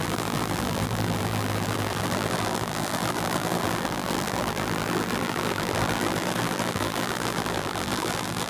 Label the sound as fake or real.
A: fake